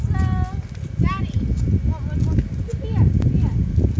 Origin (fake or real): real